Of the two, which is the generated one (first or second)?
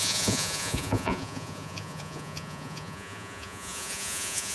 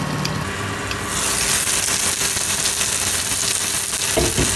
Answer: first